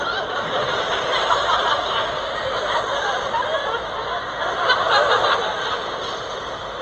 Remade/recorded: recorded